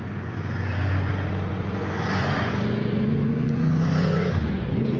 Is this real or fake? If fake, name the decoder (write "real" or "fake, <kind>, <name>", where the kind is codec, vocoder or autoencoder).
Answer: fake, vocoder, Vocos